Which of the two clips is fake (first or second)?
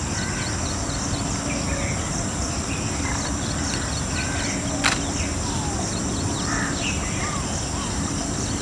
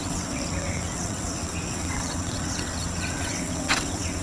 second